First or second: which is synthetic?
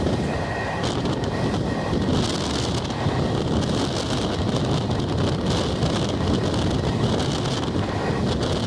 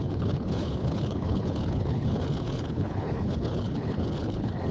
second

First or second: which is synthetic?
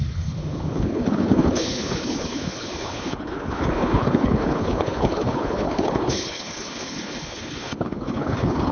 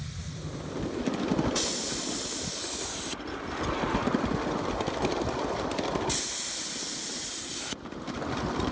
first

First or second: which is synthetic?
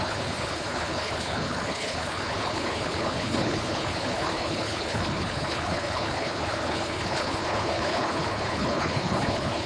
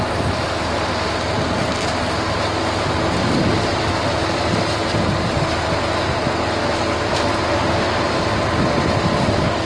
first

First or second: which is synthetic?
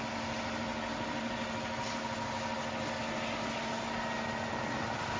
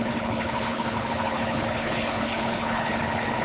second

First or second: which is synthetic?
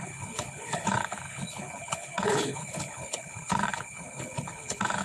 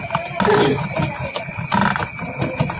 first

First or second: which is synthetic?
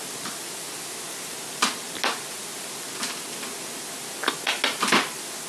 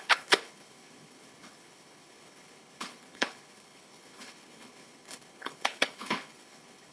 second